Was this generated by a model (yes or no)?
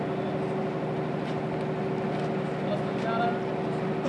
no